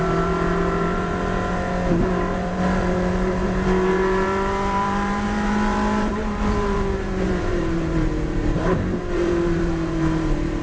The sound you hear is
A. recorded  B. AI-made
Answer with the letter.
B